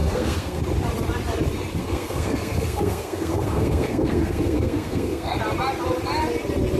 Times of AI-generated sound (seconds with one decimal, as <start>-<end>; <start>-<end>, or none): 0.0-0.6; 1.8-5.4